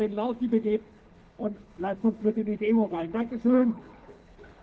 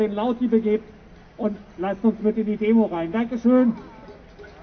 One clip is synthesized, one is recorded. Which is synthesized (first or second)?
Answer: first